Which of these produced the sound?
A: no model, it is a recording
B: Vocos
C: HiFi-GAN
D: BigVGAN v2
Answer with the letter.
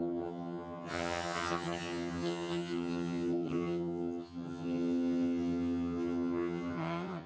C